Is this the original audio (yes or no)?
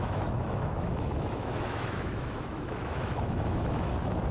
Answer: no